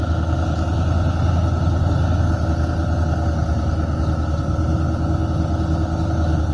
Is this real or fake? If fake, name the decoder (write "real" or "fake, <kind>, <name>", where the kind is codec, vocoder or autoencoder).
real